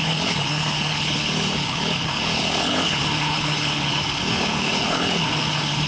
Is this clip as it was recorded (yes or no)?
no